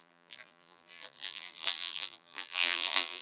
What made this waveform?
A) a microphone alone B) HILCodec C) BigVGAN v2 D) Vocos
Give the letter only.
C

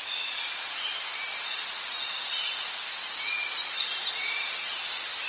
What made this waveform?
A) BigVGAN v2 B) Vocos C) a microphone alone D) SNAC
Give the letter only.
C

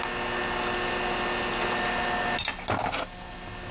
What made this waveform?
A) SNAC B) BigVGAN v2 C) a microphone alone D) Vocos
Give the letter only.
C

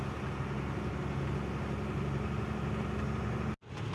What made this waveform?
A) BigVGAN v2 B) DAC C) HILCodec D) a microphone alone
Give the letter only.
D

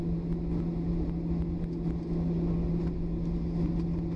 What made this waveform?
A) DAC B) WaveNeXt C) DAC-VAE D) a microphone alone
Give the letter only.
D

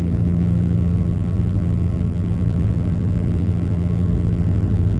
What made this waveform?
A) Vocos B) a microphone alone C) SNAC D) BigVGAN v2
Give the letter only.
D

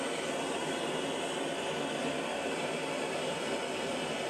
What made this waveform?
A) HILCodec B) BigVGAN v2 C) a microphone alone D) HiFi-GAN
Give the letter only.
C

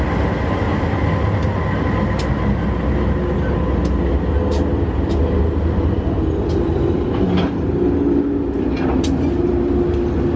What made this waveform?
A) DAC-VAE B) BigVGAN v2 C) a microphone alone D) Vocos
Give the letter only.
C